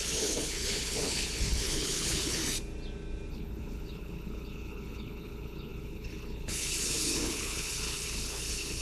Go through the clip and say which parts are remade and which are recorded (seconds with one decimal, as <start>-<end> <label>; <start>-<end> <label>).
0.0-2.4 remade; 2.4-3.3 recorded; 3.3-8.8 remade